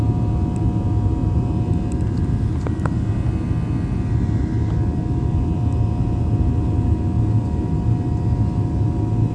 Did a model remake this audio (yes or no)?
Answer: no